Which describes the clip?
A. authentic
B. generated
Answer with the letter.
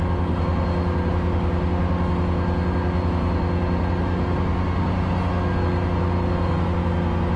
A